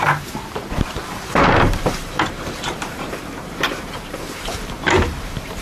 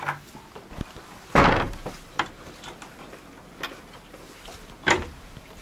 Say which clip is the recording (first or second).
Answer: second